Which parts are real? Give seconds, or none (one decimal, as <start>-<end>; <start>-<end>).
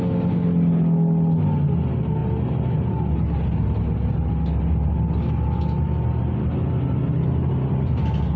0.0-8.4